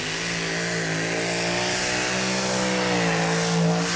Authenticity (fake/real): real